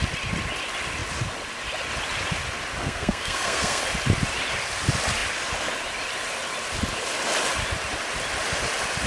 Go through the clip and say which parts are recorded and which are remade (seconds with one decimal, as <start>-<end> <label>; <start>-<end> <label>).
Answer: 0.0-2.8 recorded; 2.8-3.8 remade; 3.8-9.1 recorded